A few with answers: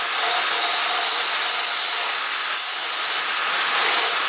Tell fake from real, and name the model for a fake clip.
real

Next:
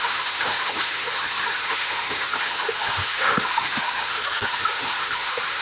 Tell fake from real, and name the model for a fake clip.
fake, autoencoder, DAC-VAE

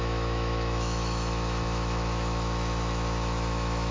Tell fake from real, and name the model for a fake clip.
fake, autoencoder, DAC-VAE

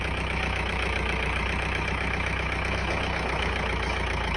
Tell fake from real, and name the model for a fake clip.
fake, autoencoder, DAC-VAE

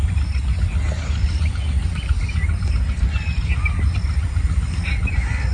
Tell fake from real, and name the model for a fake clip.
real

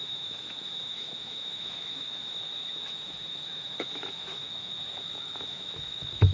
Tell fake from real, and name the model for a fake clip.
fake, autoencoder, DAC-VAE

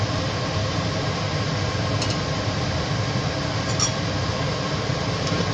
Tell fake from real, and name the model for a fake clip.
real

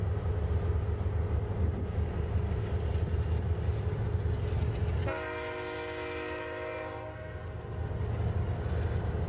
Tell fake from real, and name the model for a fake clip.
real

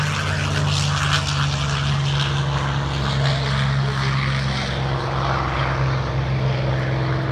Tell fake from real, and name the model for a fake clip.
real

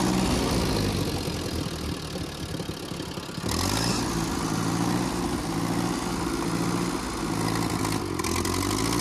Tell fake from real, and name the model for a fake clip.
real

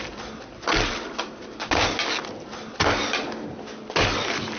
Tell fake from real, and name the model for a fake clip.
real